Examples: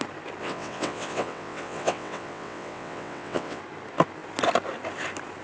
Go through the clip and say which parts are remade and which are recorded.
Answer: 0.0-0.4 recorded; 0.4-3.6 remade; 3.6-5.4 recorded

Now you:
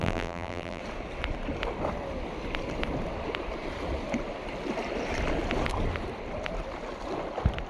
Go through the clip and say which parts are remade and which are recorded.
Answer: 0.0-0.8 remade; 0.8-7.7 recorded